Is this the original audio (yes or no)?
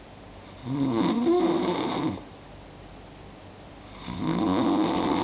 yes